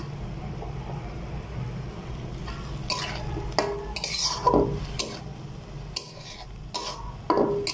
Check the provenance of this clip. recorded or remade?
recorded